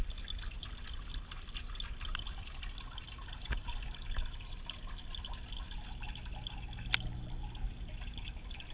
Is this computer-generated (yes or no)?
no